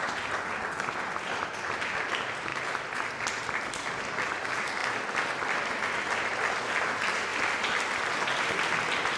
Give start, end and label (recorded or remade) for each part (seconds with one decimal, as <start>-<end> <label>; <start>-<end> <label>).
0.0-9.2 recorded